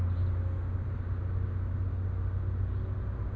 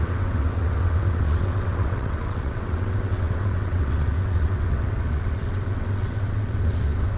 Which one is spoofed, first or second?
second